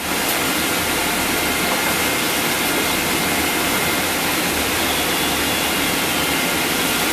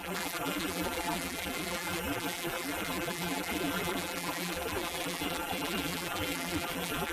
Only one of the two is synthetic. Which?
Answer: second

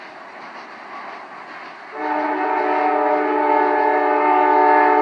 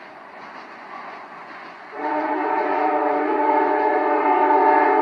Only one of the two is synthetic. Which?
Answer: second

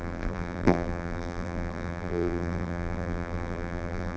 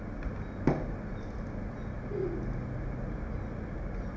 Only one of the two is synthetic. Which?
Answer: first